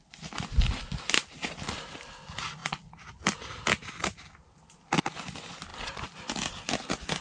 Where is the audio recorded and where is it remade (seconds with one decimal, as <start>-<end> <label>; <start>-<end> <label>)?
0.0-7.2 recorded